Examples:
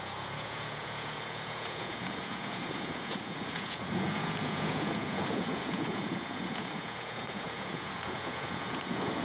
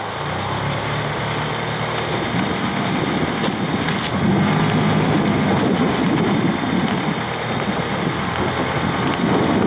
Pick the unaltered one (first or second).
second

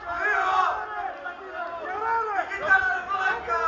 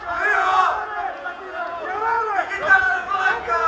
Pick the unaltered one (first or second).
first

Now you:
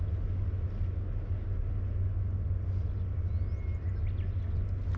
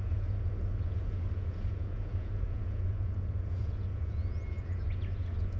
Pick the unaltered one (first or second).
first